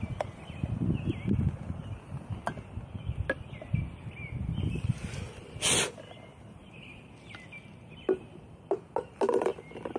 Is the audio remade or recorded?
recorded